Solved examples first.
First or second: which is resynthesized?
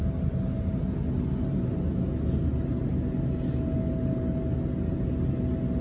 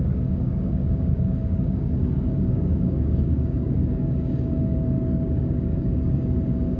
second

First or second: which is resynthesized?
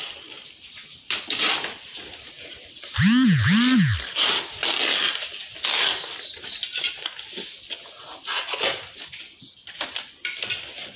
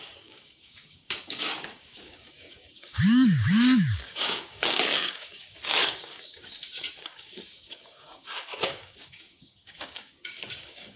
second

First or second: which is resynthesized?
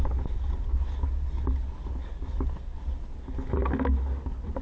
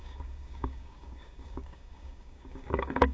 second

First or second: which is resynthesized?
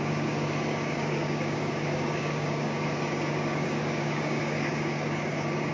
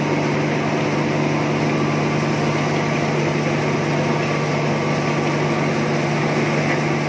first